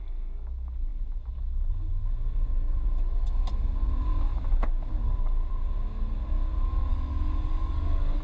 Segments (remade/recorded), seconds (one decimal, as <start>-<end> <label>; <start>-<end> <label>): 0.0-6.9 recorded; 6.9-8.2 remade